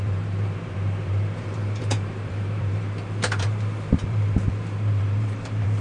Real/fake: fake